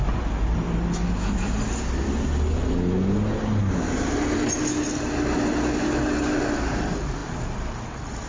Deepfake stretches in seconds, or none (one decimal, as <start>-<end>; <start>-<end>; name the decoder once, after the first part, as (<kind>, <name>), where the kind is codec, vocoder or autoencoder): none